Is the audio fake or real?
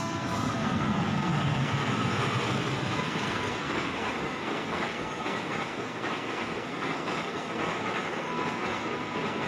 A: fake